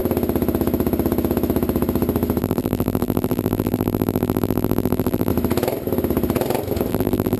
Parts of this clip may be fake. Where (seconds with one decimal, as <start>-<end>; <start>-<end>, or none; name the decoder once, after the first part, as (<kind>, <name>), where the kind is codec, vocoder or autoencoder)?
2.4-5.3 (vocoder, BigVGAN v2); 6.9-7.4